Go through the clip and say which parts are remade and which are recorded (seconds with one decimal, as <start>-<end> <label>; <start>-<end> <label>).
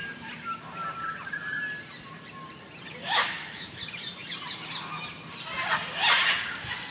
0.0-3.0 recorded; 3.0-3.8 remade; 3.8-6.9 recorded